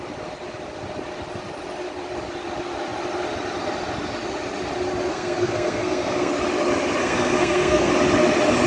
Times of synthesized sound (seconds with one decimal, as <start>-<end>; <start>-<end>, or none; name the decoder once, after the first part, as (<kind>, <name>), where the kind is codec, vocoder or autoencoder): 5.1-6.3 (codec, SNAC); 7.0-7.9

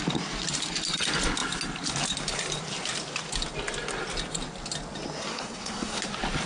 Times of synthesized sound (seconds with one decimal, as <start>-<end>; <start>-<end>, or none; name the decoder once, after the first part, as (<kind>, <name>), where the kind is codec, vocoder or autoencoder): 5.3-6.0 (codec, SNAC)

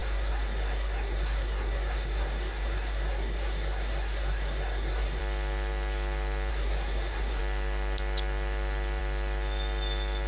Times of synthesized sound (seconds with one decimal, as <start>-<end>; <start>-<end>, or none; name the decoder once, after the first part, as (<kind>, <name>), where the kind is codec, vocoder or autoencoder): 0.0-5.2 (codec, SNAC); 6.5-7.4

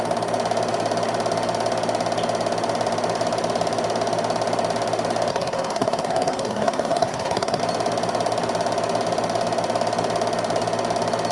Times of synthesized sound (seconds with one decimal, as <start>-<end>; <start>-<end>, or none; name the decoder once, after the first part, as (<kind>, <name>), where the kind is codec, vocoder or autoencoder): 5.3-7.6 (codec, SNAC)